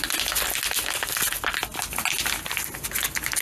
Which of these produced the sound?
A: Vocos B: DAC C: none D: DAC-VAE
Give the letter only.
C